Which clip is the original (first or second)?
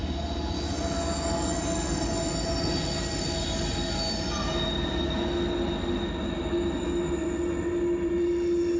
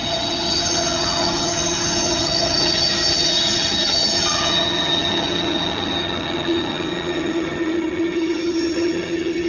first